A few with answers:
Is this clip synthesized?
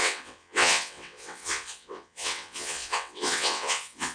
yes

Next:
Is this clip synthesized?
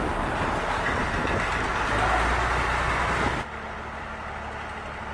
no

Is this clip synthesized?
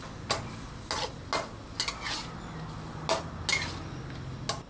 no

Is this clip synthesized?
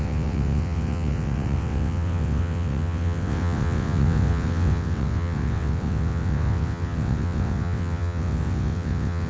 yes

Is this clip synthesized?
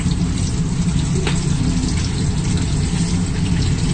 no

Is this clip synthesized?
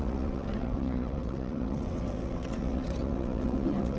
yes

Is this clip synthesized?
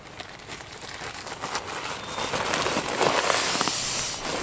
no